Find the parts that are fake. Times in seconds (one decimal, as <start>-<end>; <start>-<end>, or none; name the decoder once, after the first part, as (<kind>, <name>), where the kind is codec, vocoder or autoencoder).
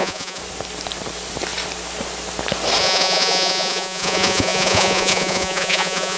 0.0-0.4 (vocoder, Vocos); 2.8-6.2